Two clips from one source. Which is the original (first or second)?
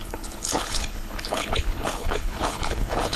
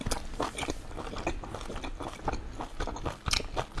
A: second